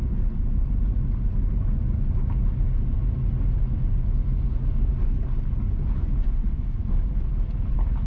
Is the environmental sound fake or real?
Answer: real